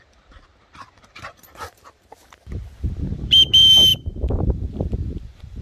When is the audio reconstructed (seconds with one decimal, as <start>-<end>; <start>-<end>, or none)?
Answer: 0.0-2.2; 3.1-5.6